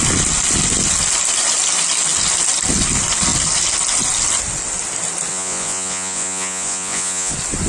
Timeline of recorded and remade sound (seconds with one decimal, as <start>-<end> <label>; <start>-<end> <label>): 0.0-5.3 recorded; 5.3-7.3 remade; 7.3-7.7 recorded